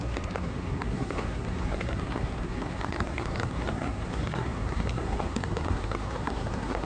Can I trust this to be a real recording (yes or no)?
no